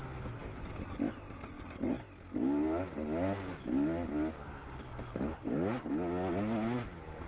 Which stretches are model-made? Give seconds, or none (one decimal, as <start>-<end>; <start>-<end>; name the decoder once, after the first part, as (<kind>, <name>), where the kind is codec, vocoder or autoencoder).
none